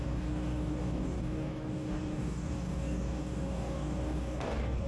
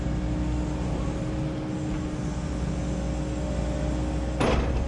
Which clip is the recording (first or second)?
second